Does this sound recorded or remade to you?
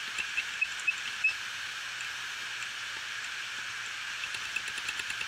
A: recorded